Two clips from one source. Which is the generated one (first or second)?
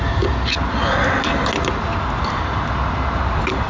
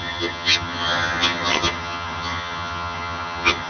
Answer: second